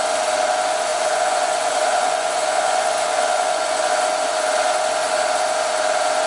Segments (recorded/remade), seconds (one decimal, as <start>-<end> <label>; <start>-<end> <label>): 0.0-0.9 recorded; 0.9-3.9 remade; 3.9-6.3 recorded